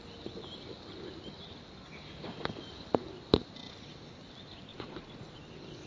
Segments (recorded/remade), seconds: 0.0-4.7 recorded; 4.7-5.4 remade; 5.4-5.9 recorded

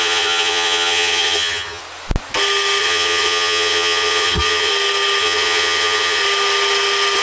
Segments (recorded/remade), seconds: 0.0-1.8 remade; 1.8-2.8 recorded; 2.8-4.7 remade; 4.7-5.2 recorded; 5.2-6.2 remade; 6.2-7.2 recorded